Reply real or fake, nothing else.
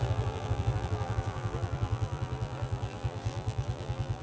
fake